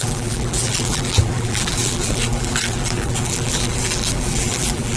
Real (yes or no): no